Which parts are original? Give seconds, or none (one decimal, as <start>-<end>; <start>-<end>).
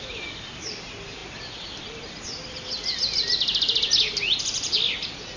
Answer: 0.0-5.4